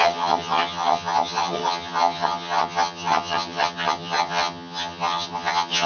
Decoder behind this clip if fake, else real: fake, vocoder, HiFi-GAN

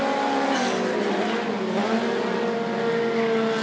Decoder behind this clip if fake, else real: real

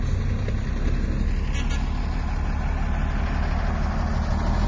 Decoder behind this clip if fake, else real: real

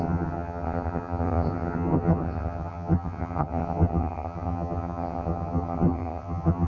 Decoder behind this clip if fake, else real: fake, vocoder, HiFi-GAN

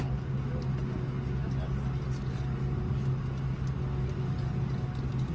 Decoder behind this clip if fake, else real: real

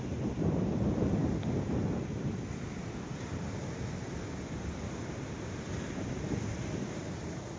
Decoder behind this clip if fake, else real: real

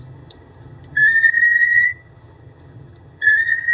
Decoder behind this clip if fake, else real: fake, vocoder, HiFi-GAN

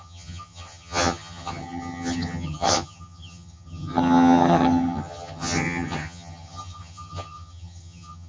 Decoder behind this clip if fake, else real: fake, vocoder, HiFi-GAN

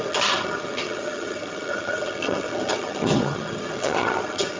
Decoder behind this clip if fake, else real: fake, vocoder, HiFi-GAN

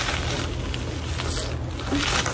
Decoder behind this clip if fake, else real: real